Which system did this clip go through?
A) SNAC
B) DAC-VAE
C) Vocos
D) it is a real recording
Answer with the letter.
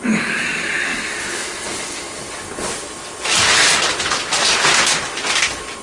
D